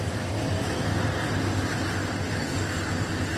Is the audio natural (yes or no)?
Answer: yes